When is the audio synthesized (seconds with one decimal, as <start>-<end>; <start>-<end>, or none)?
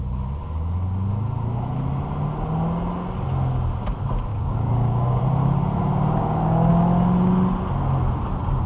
4.3-5.2; 6.2-6.7